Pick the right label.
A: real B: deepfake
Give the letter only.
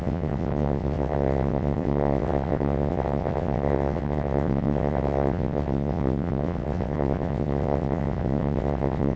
B